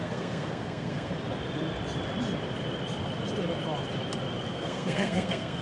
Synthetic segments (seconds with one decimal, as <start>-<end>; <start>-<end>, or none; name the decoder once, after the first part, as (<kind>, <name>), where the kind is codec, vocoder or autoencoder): 0.0-1.1 (codec, SNAC); 4.5-5.6